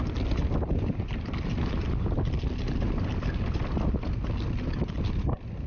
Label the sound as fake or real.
real